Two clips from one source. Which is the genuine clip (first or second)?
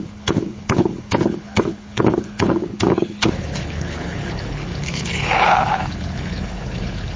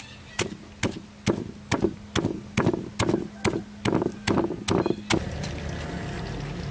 second